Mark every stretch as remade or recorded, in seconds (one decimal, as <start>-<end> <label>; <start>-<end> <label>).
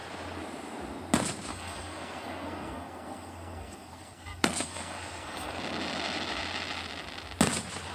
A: 0.0-1.5 recorded; 1.5-5.6 remade; 5.6-7.9 recorded